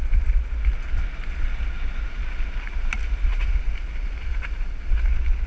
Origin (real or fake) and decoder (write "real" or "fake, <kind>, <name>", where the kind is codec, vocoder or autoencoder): real